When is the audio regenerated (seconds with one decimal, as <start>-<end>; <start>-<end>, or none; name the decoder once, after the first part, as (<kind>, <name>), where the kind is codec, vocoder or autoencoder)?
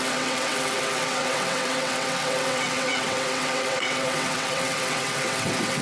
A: 0.0-5.8 (vocoder, WaveNeXt)